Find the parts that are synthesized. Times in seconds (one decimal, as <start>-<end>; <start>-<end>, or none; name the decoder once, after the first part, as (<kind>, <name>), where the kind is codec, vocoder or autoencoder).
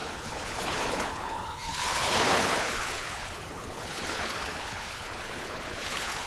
0.0-6.3 (codec, HILCodec)